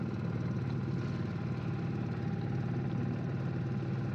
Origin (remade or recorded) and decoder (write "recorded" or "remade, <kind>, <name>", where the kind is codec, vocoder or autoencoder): recorded